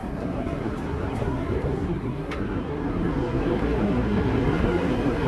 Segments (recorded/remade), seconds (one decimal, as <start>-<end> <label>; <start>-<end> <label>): 0.0-5.3 remade